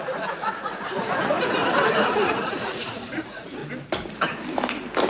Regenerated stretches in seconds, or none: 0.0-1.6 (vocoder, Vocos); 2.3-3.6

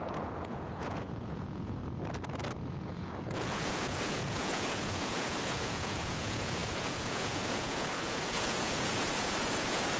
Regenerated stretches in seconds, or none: 0.0-1.8 (vocoder, Vocos); 2.7-10.0